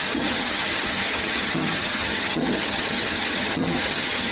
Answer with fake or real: fake